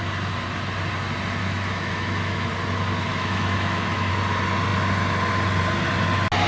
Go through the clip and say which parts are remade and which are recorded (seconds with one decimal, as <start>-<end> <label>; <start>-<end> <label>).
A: 0.0-1.4 recorded; 1.4-2.5 remade; 2.5-3.1 recorded; 3.1-4.1 remade; 4.1-6.5 recorded